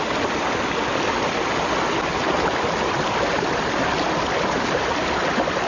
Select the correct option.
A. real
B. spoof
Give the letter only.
A